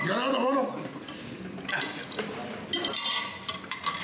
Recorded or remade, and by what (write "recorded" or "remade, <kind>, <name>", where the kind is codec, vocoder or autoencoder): recorded